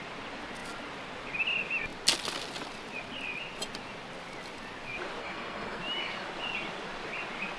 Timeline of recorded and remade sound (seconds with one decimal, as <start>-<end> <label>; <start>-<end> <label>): 0.0-5.2 recorded; 5.2-5.8 remade; 5.8-7.6 recorded